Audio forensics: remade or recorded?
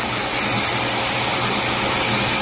recorded